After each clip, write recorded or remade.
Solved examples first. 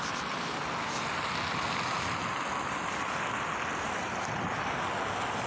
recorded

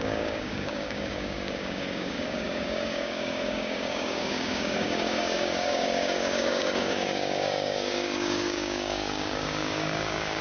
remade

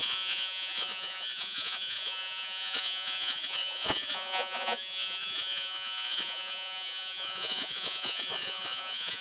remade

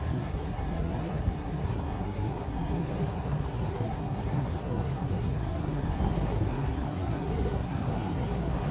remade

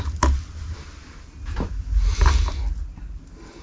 recorded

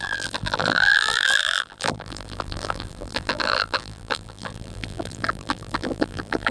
remade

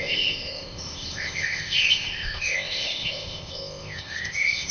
remade